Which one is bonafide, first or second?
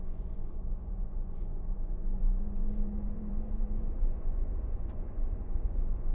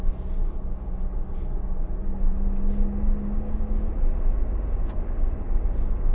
second